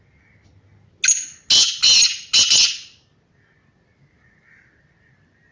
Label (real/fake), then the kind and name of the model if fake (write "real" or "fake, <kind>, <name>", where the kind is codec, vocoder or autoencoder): real